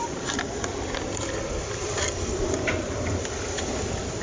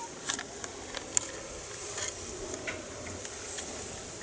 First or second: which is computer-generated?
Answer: first